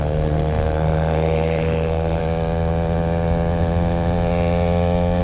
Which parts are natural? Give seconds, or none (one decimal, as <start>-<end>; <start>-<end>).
2.2-5.2